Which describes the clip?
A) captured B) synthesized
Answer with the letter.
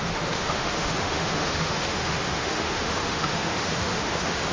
B